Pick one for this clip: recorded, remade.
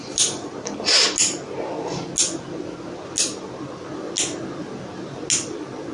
recorded